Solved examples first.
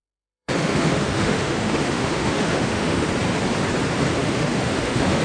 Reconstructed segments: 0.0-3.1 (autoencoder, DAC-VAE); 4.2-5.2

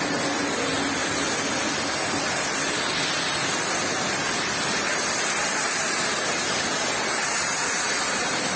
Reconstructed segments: none

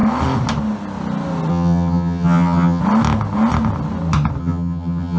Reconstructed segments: 1.5-2.8 (vocoder, HiFi-GAN); 4.4-5.2

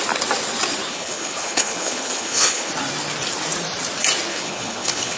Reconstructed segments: 0.9-2.7 (codec, HILCodec); 4.3-5.2

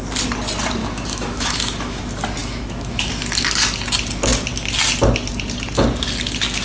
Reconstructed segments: 0.8-2.0 (autoencoder, DAC-VAE); 2.4-3.1